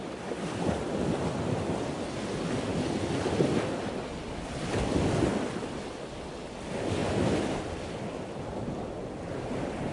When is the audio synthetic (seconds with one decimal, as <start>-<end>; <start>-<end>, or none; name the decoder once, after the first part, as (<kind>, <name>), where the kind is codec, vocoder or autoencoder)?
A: none